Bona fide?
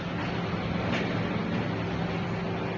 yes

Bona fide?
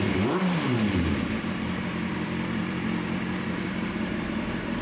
no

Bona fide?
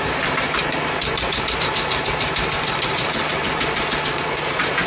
no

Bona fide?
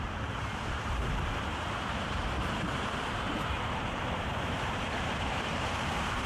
no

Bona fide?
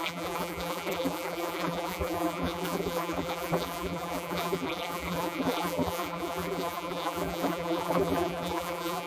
no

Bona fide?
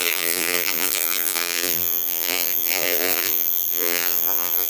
no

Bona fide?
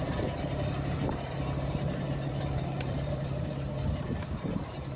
no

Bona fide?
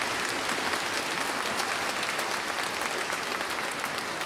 yes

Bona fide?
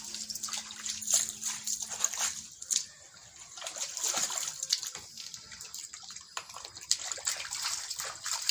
no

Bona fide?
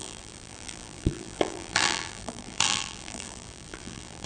no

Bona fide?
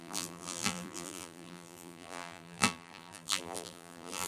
no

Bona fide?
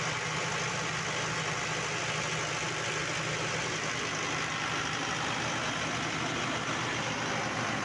yes